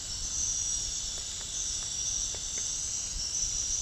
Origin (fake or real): real